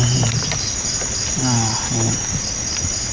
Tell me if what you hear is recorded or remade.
recorded